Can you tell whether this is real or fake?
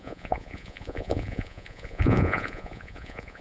fake